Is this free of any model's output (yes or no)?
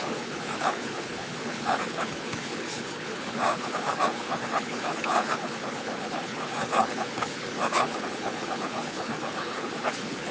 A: no